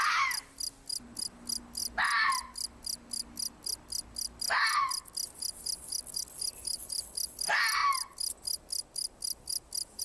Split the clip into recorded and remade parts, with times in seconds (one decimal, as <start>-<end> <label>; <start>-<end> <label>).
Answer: 0.0-1.8 recorded; 1.8-4.4 remade; 4.4-6.6 recorded; 6.6-7.1 remade; 7.1-10.0 recorded